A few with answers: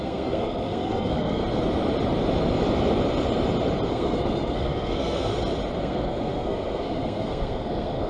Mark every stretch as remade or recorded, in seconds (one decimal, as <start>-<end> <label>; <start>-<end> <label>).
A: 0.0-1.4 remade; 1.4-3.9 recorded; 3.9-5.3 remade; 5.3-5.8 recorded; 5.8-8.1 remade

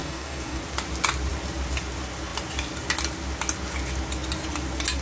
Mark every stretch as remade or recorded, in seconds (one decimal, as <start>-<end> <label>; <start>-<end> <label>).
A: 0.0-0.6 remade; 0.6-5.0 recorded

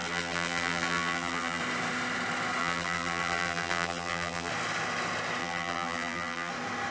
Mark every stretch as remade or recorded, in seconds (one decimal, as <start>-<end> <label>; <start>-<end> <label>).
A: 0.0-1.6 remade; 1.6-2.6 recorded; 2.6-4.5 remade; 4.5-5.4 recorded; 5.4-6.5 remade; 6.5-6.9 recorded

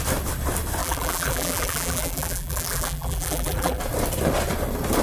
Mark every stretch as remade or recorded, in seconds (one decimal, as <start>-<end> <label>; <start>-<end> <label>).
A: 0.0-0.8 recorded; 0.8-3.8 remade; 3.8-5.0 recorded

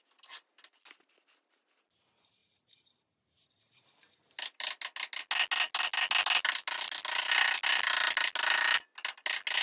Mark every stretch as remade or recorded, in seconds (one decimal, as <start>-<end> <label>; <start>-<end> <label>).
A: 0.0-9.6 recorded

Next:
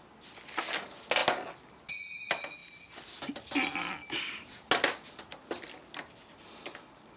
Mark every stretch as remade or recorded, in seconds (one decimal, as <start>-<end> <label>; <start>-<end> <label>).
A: 0.0-7.2 recorded

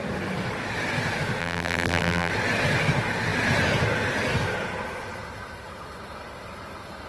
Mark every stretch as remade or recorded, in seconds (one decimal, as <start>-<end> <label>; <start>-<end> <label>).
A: 0.0-1.4 recorded; 1.4-2.3 remade; 2.3-7.1 recorded